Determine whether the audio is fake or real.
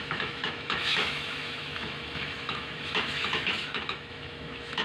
fake